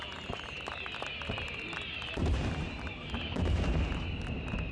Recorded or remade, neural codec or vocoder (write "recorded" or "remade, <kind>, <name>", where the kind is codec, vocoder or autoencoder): remade, vocoder, BigVGAN v2